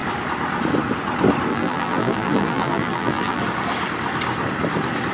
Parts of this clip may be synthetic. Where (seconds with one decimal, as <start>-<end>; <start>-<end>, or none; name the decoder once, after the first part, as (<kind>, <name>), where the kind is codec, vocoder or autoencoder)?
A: 1.5-3.4 (vocoder, BigVGAN v2)